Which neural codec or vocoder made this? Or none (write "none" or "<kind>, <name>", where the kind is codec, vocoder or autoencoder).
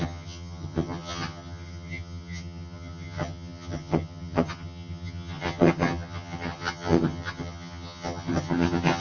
vocoder, HiFi-GAN